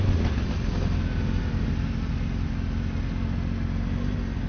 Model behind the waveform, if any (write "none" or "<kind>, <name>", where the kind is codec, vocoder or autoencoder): none